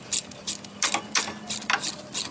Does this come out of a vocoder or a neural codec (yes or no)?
no